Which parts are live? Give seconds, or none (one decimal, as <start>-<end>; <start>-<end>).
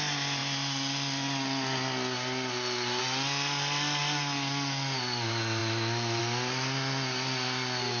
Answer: 0.0-8.0